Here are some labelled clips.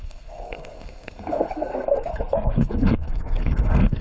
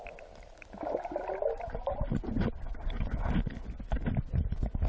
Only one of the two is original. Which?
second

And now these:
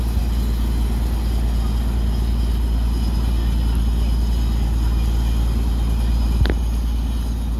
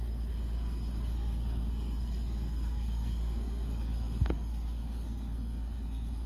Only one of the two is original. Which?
first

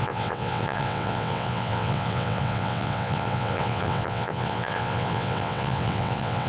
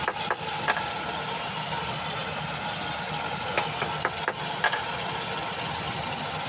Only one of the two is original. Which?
second